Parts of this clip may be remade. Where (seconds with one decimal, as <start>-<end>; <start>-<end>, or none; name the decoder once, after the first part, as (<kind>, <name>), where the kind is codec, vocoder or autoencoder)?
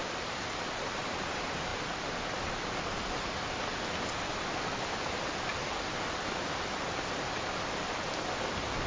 none